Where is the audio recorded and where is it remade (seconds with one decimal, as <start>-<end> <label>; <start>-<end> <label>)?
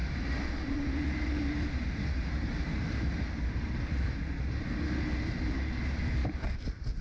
0.0-4.2 remade; 4.2-7.0 recorded